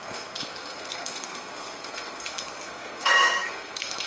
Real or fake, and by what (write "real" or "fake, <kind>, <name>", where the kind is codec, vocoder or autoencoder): fake, codec, SNAC